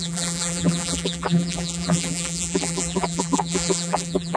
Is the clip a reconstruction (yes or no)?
yes